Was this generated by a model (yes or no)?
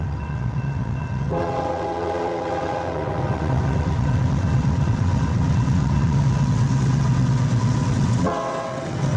yes